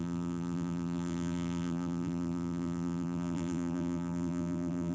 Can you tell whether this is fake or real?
fake